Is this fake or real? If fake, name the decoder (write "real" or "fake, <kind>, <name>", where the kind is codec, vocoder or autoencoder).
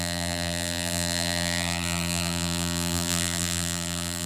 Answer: fake, vocoder, BigVGAN v2